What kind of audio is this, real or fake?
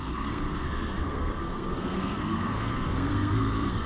fake